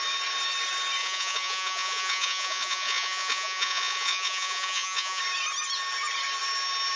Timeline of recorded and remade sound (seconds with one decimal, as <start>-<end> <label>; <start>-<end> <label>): 0.0-1.0 recorded; 1.0-5.2 remade; 5.2-7.0 recorded